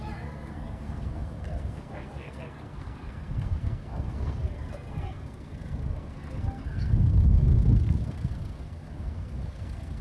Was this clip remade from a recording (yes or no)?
yes